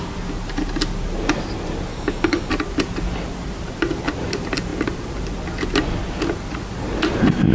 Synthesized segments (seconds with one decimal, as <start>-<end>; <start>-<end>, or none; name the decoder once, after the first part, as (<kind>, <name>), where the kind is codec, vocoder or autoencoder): 1.9-2.5 (codec, DAC)